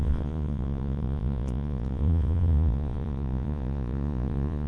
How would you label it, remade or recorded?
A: remade